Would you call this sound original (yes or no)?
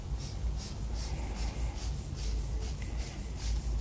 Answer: yes